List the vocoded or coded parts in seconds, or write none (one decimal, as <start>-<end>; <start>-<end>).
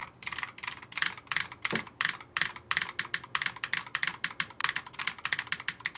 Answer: none